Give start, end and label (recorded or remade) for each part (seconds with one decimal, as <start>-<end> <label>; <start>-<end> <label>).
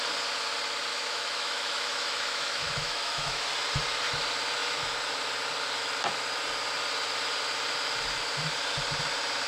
0.0-0.9 recorded; 0.9-3.5 remade; 3.5-9.5 recorded